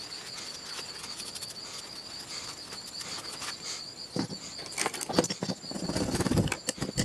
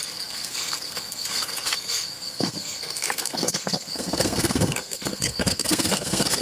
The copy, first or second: second